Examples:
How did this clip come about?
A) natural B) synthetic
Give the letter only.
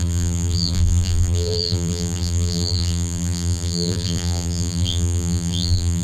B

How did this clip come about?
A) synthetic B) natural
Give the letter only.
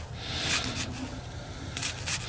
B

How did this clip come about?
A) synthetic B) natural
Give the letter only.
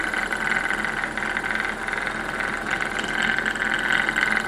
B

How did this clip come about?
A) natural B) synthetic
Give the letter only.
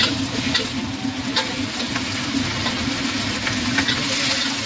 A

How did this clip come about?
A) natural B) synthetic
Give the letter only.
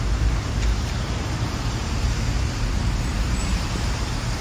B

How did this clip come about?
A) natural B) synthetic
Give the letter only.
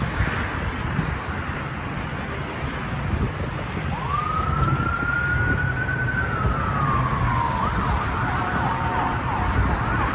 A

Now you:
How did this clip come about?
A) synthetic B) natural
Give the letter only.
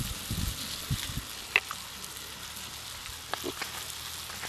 B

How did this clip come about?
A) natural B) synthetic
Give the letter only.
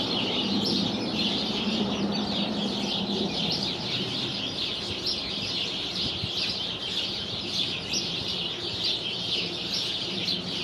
B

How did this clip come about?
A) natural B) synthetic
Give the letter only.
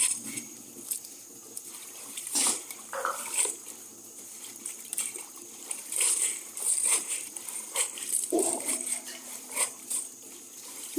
B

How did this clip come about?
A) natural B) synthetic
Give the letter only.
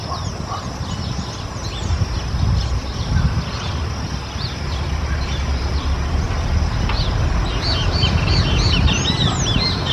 A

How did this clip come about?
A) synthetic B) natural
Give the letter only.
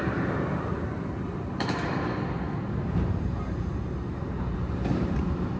A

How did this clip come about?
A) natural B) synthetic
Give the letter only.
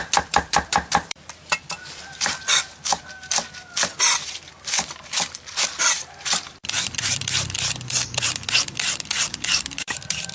B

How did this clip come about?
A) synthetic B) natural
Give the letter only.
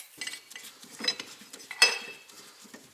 B